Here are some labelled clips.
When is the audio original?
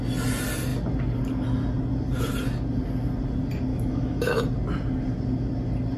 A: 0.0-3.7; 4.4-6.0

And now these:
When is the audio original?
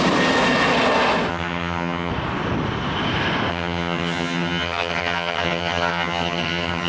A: 0.0-1.3; 2.1-3.5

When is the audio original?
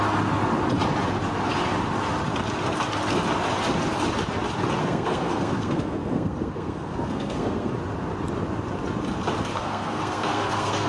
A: 0.0-4.8; 7.7-9.5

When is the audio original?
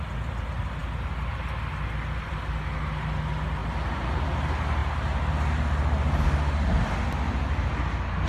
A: 0.0-8.3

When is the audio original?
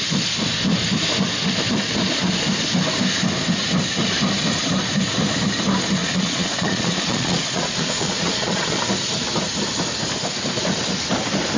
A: 0.0-6.0; 8.8-11.6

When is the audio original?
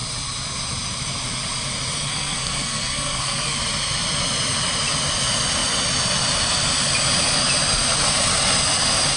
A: 0.0-2.1; 3.6-9.2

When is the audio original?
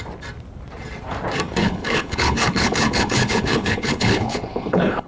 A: 0.0-1.6